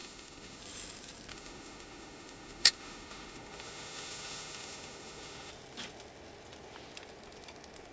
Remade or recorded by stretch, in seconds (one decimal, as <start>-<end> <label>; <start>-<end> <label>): 0.0-0.6 remade; 0.6-1.3 recorded; 1.3-5.5 remade; 5.5-7.9 recorded